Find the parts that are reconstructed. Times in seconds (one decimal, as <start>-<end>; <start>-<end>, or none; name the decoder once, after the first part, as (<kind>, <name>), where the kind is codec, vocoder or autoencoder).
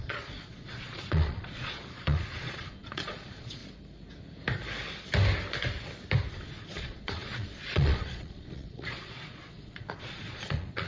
0.0-3.6 (vocoder, Vocos); 6.3-10.9